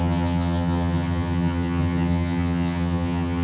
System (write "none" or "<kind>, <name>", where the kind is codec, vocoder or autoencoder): vocoder, HiFi-GAN